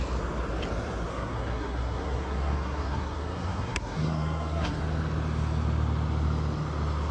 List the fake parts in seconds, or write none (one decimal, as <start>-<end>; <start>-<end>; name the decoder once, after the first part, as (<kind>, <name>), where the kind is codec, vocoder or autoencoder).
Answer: 1.1-4.8 (codec, SNAC)